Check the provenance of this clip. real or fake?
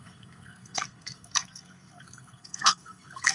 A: fake